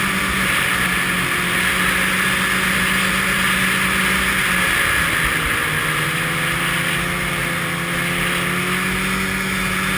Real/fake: real